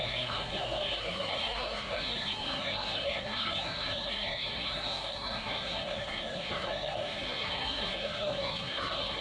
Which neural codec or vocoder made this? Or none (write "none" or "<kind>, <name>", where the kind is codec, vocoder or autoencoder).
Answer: codec, SNAC